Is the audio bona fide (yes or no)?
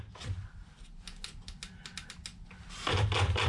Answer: yes